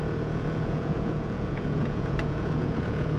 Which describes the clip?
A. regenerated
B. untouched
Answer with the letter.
A